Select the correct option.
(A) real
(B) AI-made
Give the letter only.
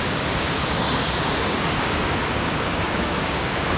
B